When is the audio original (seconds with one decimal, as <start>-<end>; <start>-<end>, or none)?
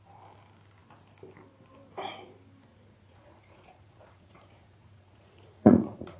0.0-2.7